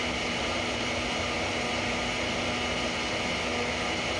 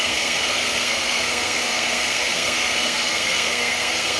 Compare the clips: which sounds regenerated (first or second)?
second